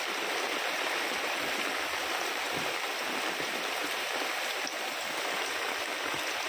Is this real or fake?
fake